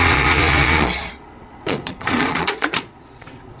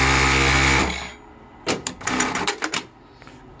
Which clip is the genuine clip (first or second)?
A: second